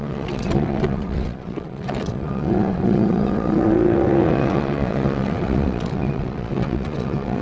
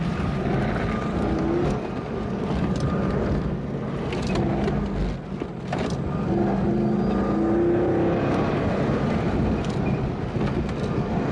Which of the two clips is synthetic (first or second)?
first